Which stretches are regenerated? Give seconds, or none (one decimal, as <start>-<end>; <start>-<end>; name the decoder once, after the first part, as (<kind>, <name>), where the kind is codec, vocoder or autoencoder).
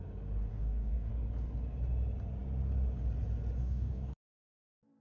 0.5-1.1 (codec, DAC); 3.6-4.4